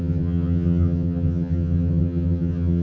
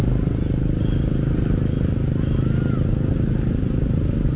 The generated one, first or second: first